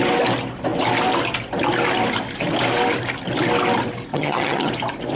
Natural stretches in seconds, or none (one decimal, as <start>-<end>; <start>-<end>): 0.0-4.1; 4.7-5.2